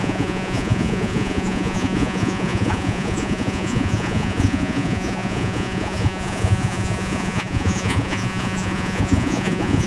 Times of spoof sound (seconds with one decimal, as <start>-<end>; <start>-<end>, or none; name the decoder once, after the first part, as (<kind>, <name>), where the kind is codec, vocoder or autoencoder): 0.0-9.9 (vocoder, Vocos)